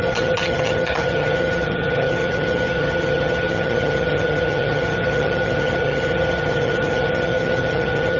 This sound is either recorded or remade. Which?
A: remade